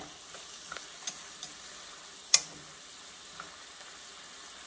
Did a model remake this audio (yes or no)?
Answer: no